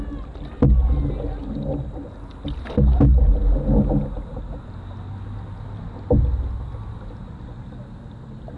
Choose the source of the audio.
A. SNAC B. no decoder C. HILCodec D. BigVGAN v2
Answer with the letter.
B